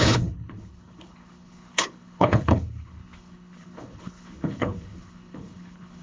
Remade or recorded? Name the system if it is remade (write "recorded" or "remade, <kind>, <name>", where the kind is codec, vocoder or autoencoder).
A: remade, codec, HILCodec